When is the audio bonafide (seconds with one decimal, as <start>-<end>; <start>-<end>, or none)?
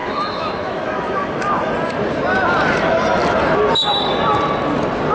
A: 1.7-5.1